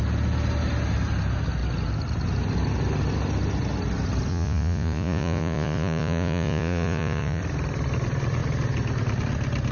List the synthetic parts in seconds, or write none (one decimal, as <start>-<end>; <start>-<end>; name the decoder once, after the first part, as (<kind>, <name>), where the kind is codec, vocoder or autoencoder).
4.3-7.4 (vocoder, Vocos)